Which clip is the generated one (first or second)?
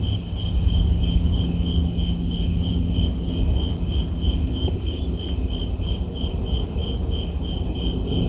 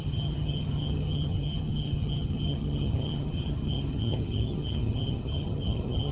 second